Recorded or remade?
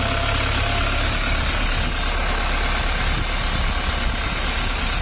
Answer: recorded